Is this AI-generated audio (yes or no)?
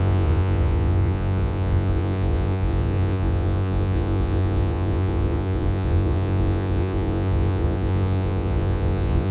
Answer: yes